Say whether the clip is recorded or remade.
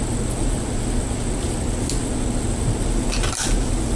recorded